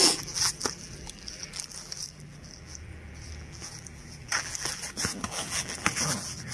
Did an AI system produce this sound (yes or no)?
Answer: yes